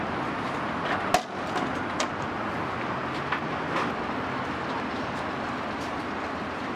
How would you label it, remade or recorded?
recorded